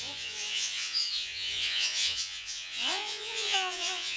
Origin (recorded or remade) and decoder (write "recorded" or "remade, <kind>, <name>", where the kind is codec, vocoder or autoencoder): remade, vocoder, Vocos